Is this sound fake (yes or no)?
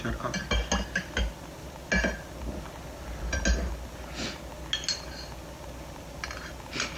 no